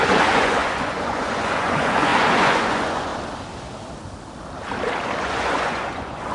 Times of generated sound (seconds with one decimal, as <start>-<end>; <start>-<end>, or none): 0.0-3.1; 5.2-6.3